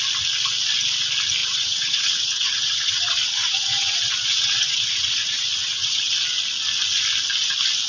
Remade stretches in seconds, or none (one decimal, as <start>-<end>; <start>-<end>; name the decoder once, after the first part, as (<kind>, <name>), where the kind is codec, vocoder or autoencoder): 1.4-6.1 (vocoder, WaveNeXt)